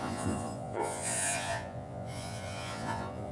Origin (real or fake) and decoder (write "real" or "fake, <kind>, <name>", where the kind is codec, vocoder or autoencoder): fake, vocoder, Vocos